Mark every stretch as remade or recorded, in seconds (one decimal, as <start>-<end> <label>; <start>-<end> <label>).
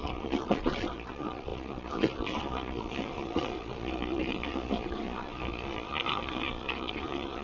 0.0-7.4 remade